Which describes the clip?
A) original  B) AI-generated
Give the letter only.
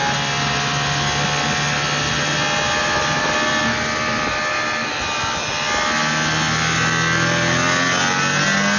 A